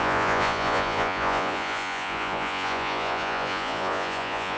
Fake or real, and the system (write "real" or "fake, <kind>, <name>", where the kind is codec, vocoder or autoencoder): fake, vocoder, Vocos